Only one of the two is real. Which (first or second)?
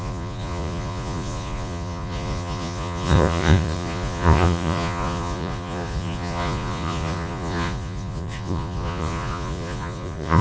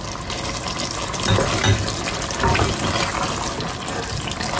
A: second